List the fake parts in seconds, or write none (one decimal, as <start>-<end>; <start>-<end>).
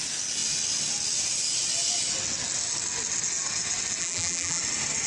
4.0-4.6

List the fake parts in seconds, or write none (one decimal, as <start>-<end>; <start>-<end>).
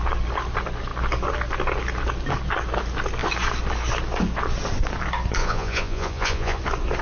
5.4-6.6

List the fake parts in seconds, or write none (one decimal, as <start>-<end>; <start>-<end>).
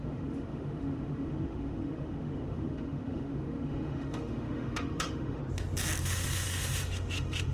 0.0-5.4; 6.0-7.5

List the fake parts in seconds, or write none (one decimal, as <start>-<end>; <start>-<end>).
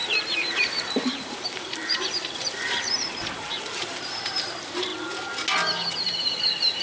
0.0-4.9; 5.9-6.8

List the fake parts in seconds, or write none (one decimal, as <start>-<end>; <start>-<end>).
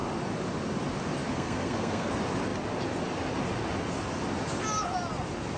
1.3-2.1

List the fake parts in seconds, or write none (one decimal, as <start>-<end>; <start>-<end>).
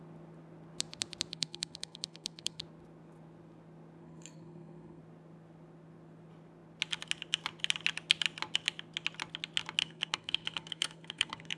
1.3-2.6; 4.0-5.0; 9.8-11.6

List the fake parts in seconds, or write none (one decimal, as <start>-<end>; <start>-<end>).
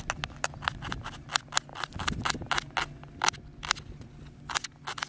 none